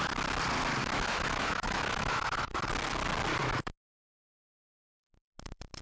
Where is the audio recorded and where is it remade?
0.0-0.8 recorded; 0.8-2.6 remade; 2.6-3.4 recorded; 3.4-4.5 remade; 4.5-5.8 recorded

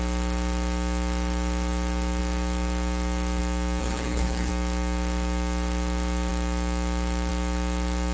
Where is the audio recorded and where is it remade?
0.0-3.8 recorded; 3.8-4.5 remade; 4.5-8.1 recorded